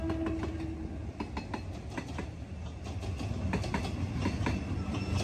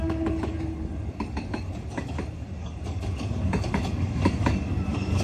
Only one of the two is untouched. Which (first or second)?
first